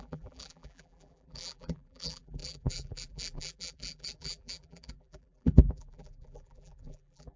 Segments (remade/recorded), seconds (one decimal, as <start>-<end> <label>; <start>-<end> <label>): 0.0-7.4 remade